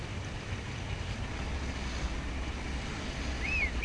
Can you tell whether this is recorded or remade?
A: recorded